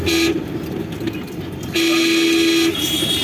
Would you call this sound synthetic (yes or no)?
no